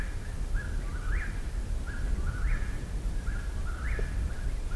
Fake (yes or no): no